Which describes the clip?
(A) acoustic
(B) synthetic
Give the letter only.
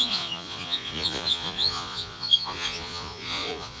B